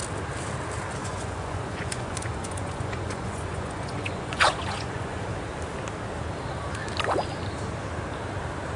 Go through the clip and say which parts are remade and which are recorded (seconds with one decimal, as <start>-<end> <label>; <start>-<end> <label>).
0.0-1.0 recorded; 1.0-5.3 remade; 5.3-8.8 recorded